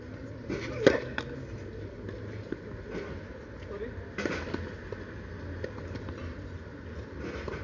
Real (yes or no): yes